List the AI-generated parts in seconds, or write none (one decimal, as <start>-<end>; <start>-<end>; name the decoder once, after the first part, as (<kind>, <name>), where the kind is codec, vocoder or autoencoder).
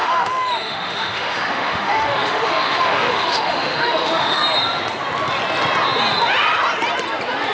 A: 0.0-4.4 (autoencoder, DAC-VAE)